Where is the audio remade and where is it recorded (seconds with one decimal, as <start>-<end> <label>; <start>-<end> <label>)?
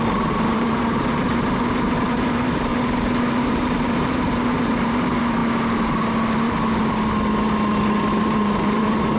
0.0-2.7 remade; 2.7-3.2 recorded; 3.2-5.4 remade; 5.4-8.0 recorded; 8.0-9.2 remade